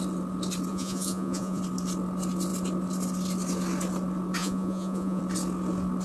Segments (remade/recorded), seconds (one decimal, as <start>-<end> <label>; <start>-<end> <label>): 0.0-0.7 recorded; 0.7-1.6 remade; 1.6-4.4 recorded; 4.4-5.2 remade; 5.2-6.0 recorded

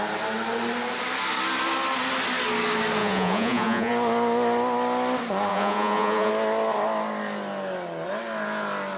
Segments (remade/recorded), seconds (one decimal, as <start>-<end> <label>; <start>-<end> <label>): 0.0-3.0 recorded; 3.0-3.9 remade; 3.9-5.5 recorded; 5.5-6.3 remade; 6.3-9.0 recorded